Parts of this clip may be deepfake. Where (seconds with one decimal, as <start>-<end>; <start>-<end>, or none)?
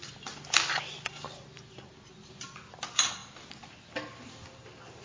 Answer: none